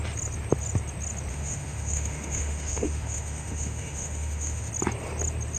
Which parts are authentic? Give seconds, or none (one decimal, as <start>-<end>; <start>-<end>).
0.0-1.3; 4.7-5.6